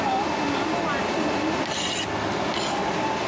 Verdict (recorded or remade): recorded